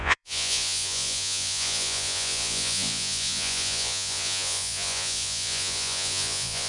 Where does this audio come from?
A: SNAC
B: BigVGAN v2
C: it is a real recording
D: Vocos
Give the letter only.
D